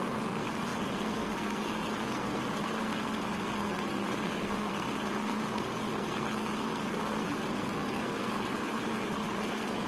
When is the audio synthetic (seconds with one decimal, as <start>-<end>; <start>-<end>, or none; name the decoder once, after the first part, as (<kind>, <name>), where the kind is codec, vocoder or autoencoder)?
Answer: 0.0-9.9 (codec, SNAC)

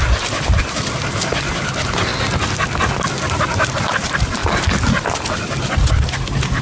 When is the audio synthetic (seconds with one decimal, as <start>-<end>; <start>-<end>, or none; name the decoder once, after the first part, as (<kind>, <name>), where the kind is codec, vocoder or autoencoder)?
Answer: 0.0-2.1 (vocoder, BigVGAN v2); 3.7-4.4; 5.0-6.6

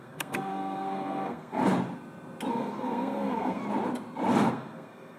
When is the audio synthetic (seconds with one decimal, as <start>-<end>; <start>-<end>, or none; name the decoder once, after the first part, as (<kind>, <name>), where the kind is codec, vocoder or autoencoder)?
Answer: 0.0-1.6 (codec, SNAC); 2.5-3.6; 4.5-5.2